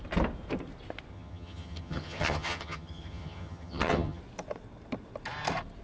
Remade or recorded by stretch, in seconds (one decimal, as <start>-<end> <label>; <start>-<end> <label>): 0.0-1.1 recorded; 1.1-4.2 remade; 4.2-5.8 recorded